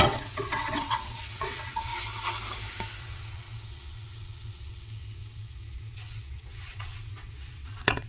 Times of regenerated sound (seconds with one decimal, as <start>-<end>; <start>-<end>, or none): 0.0-1.9; 3.0-8.1